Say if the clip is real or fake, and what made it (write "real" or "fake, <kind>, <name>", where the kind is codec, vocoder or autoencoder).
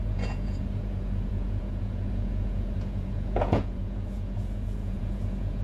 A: fake, vocoder, Vocos